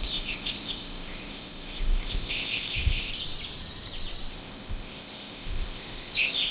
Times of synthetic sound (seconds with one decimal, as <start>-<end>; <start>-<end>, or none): 0.0-3.1; 4.3-6.5